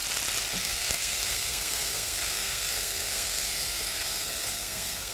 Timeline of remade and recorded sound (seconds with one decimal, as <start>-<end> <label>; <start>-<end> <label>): 0.0-0.6 recorded; 0.6-5.1 remade